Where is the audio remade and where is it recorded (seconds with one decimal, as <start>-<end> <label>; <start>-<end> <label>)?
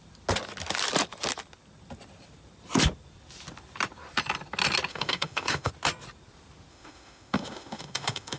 0.0-4.9 recorded; 4.9-5.7 remade; 5.7-6.7 recorded; 6.7-8.4 remade